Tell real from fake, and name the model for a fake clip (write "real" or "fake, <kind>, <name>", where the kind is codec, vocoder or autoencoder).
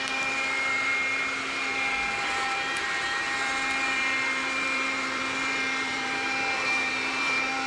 fake, vocoder, BigVGAN v2